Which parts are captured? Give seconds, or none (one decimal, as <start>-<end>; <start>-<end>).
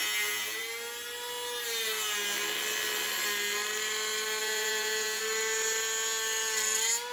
0.0-4.4; 5.2-7.1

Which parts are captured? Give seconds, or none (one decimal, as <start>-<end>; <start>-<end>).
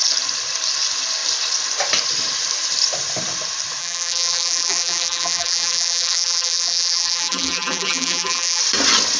0.0-3.8; 8.6-9.2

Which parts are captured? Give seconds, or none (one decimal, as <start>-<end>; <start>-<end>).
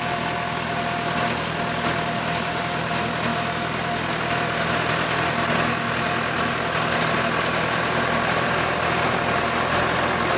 0.0-10.4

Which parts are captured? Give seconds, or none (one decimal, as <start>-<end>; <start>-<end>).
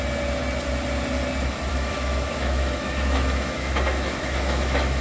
0.0-1.7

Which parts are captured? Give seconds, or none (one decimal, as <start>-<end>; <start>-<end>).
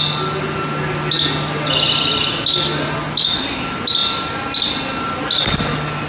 0.0-6.1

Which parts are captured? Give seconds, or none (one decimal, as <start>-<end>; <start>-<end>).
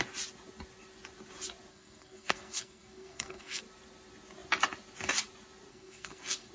0.0-1.7; 3.6-5.7